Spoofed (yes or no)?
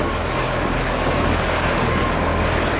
yes